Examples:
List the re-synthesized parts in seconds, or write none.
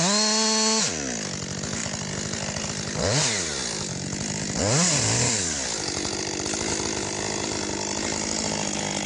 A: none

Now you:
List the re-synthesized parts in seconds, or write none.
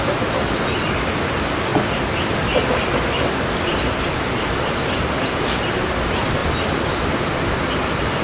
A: none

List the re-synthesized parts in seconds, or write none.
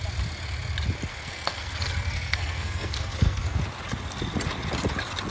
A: 1.1-3.6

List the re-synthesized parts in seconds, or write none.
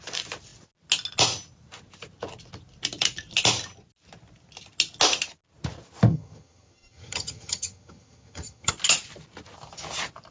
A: 6.1-8.7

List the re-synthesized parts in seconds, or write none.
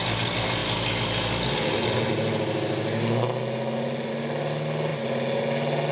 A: none